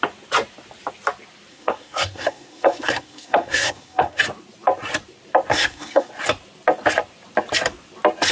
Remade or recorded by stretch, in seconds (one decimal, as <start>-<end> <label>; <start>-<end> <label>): 0.0-1.5 recorded; 1.5-4.2 remade; 4.2-5.5 recorded; 5.5-6.1 remade; 6.1-8.3 recorded